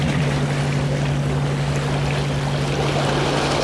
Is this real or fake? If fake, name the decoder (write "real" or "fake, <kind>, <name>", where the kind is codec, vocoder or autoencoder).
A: real